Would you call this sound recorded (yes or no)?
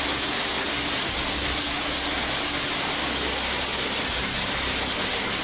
yes